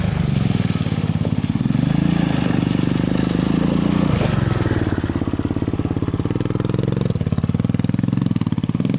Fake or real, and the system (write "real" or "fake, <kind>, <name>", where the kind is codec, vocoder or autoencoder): real